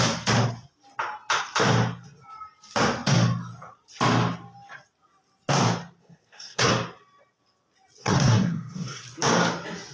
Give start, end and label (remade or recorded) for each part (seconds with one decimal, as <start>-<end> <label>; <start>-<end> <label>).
0.0-6.0 recorded; 6.0-6.7 remade; 6.7-8.0 recorded; 8.0-9.0 remade; 9.0-9.9 recorded